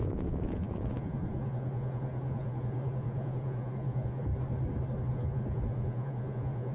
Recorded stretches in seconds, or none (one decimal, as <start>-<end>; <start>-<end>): 4.3-5.0